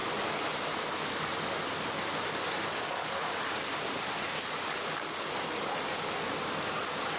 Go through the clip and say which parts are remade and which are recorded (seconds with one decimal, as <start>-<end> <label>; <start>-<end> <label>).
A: 0.0-7.2 recorded